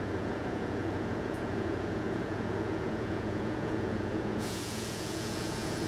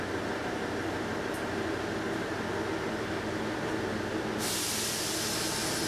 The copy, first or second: first